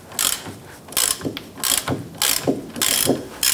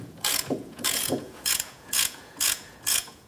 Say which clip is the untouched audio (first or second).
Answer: first